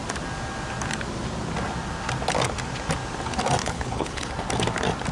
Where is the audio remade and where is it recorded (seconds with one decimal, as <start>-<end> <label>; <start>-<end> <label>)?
0.0-3.6 recorded; 3.6-4.3 remade; 4.3-5.1 recorded

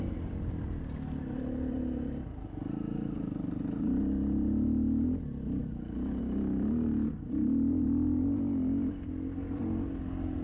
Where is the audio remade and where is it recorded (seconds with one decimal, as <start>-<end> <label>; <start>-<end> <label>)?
0.0-10.4 recorded

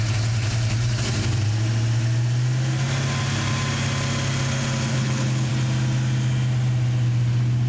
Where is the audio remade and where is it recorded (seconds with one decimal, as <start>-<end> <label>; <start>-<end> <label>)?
0.0-4.9 recorded; 4.9-5.5 remade; 5.5-7.7 recorded

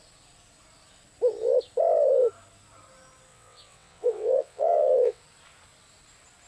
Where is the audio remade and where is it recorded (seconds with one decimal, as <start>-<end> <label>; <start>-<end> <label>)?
0.0-3.3 recorded; 3.3-5.2 remade; 5.2-6.5 recorded

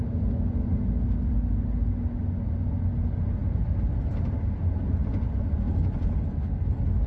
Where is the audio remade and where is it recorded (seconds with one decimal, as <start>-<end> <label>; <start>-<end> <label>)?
0.0-7.1 recorded

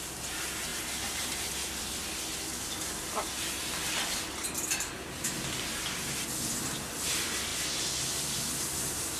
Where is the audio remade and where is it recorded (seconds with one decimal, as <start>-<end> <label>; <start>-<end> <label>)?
0.0-9.2 recorded